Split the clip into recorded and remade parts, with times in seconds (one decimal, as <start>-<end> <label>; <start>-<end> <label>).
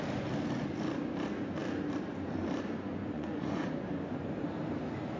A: 0.0-3.0 recorded; 3.0-3.7 remade; 3.7-5.2 recorded